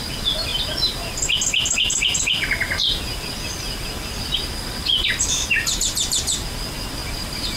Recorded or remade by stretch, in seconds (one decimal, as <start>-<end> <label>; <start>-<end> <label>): 0.0-7.0 recorded; 7.0-7.6 remade